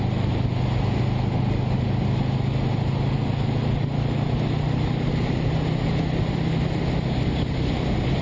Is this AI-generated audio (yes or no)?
no